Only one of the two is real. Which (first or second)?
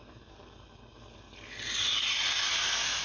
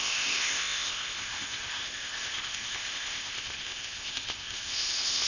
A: first